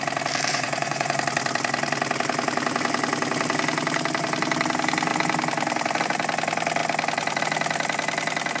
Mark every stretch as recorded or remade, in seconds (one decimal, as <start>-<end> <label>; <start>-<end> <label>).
0.0-0.5 recorded; 0.5-1.2 remade; 1.2-8.6 recorded